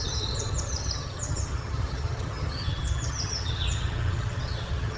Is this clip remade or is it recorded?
remade